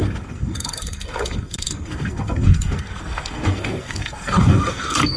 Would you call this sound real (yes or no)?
no